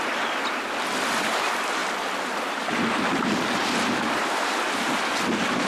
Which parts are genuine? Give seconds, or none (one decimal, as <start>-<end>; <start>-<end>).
0.0-5.7